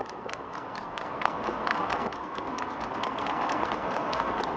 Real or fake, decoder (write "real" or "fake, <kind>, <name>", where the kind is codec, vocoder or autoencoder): fake, codec, SNAC